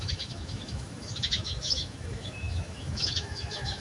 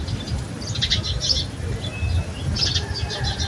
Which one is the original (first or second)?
second